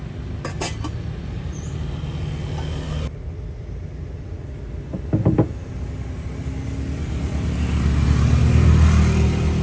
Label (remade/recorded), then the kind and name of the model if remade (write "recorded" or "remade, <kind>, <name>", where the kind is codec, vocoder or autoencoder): recorded